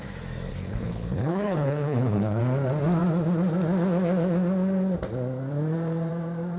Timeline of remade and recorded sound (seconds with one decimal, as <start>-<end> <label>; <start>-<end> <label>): 0.0-0.5 recorded; 0.5-2.4 remade; 2.4-6.6 recorded